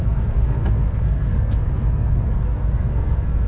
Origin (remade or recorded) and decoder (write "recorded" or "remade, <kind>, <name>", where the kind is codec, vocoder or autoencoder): remade, codec, SNAC